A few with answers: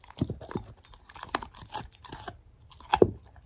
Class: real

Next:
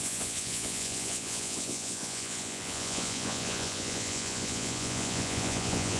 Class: fake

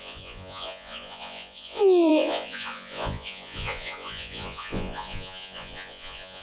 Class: fake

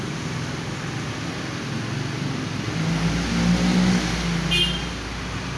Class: real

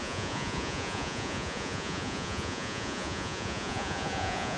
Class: fake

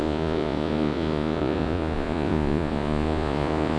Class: fake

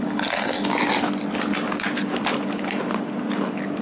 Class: real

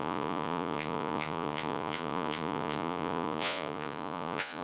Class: fake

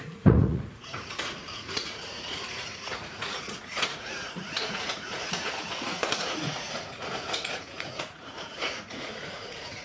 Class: fake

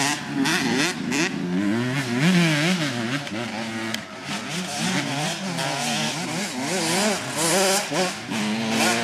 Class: real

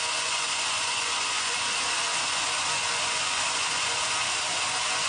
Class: fake